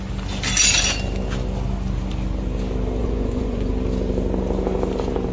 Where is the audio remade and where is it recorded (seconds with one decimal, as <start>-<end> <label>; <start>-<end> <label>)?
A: 0.0-3.0 recorded; 3.0-3.7 remade; 3.7-5.3 recorded